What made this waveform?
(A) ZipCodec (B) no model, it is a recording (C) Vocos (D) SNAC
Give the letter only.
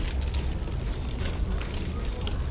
B